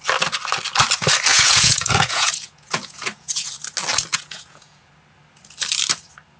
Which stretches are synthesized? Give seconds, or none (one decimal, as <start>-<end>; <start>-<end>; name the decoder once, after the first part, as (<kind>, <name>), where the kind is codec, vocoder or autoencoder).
1.3-3.5 (vocoder, Vocos); 4.1-4.9